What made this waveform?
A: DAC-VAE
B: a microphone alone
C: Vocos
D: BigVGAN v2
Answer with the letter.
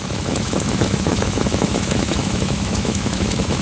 A